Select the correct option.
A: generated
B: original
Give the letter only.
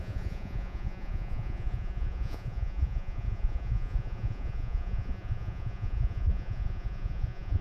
A